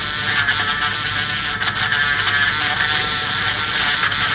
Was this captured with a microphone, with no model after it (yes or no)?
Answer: yes